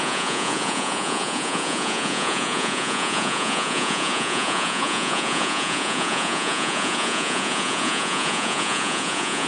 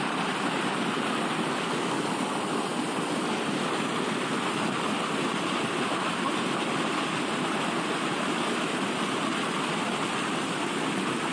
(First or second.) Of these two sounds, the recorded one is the second